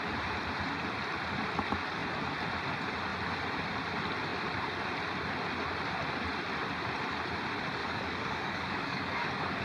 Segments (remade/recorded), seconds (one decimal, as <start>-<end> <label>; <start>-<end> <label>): 0.0-7.8 recorded; 7.8-9.6 remade